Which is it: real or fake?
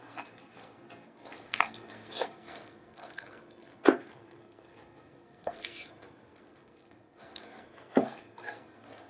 fake